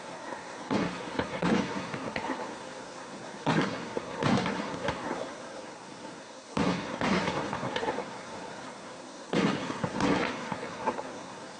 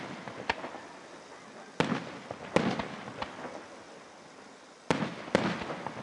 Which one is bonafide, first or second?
second